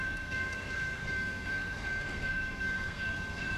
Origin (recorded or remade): remade